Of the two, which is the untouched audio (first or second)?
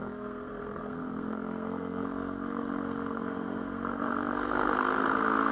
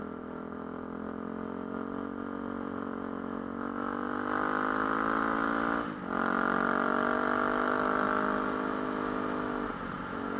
second